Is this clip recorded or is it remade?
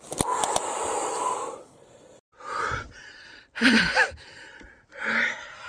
recorded